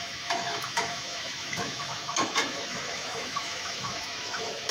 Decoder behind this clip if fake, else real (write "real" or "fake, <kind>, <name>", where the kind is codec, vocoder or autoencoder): fake, autoencoder, DAC-VAE